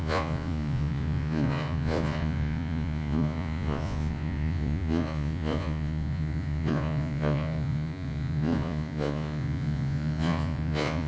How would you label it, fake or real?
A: fake